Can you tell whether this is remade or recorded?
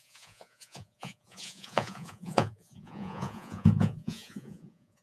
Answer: remade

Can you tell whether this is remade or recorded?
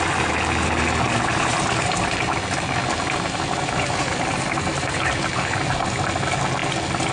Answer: recorded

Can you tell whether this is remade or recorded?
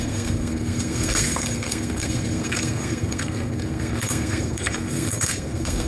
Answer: remade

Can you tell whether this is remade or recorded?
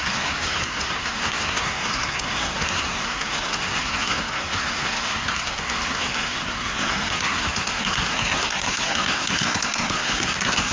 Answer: remade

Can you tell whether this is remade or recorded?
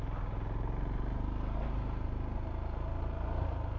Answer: recorded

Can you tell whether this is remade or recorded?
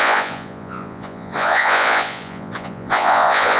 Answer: remade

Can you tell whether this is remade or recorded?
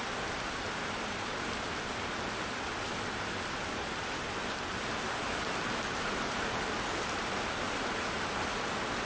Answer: recorded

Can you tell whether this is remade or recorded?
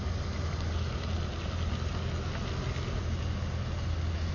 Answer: recorded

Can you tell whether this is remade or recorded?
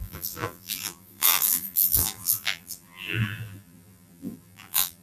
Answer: remade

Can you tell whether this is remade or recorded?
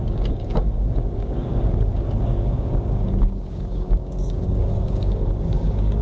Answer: remade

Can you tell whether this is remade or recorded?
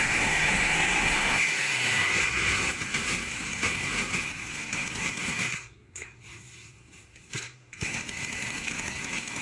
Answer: remade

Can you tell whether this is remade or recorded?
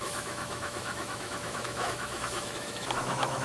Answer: remade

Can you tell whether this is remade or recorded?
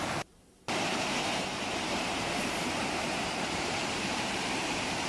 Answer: remade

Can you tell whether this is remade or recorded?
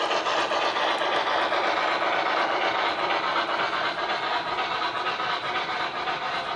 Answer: recorded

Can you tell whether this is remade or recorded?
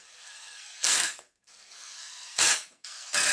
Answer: remade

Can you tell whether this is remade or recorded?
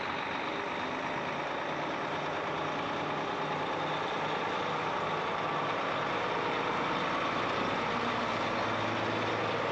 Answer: recorded